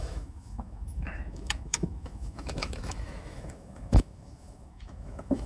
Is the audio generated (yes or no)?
yes